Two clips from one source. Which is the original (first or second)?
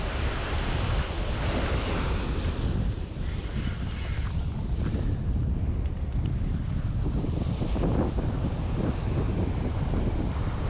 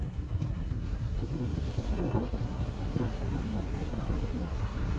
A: first